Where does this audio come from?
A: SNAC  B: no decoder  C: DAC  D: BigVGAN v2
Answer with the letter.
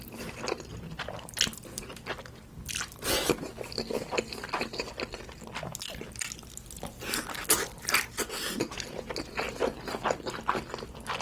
B